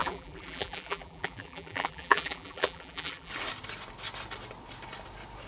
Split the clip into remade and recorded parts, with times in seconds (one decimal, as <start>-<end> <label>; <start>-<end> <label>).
0.0-3.3 remade; 3.3-5.5 recorded